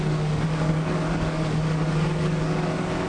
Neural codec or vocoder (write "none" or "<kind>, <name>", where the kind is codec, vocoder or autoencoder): codec, DAC